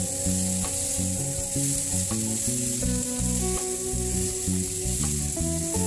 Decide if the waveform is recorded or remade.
recorded